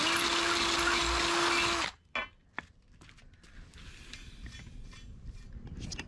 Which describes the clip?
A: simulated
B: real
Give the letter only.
B